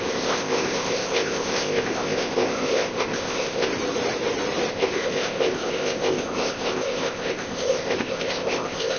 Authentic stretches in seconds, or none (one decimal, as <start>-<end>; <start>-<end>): 3.7-4.7